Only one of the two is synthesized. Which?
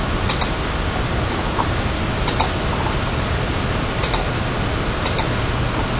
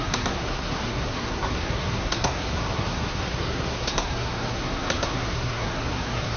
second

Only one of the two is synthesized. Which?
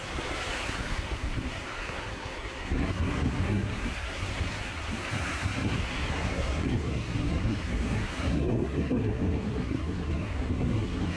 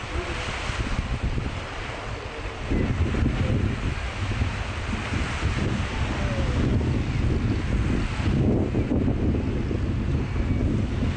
first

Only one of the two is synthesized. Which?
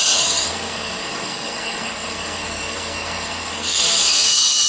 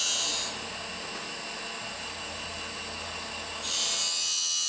first